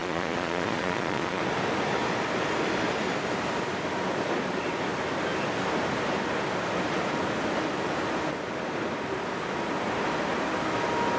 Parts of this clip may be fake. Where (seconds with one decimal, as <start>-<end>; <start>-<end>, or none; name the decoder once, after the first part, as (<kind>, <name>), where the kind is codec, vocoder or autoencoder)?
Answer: 0.0-1.4 (vocoder, Vocos)